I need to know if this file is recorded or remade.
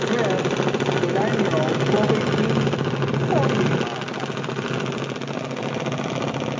recorded